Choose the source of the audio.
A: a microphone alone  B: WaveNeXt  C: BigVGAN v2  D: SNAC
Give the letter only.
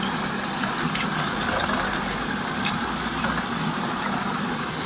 A